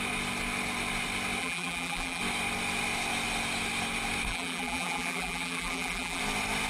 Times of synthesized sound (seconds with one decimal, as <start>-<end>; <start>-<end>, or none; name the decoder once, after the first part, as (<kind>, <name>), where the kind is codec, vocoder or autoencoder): 1.4-2.2 (vocoder, BigVGAN v2); 4.3-6.2